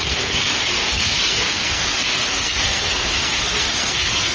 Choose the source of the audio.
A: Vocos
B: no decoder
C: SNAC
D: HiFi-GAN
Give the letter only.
C